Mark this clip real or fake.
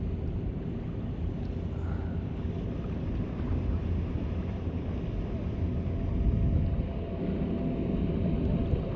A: real